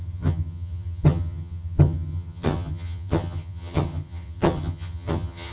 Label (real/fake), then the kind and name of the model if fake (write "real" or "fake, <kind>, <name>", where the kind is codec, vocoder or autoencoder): fake, vocoder, HiFi-GAN